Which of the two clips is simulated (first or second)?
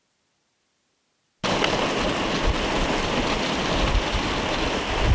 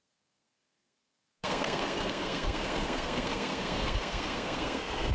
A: second